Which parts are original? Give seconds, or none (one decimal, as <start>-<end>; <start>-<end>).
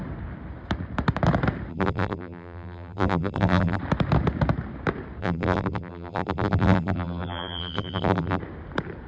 0.0-1.7; 3.8-5.2; 8.4-9.1